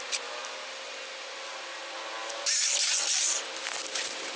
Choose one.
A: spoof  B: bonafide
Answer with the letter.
B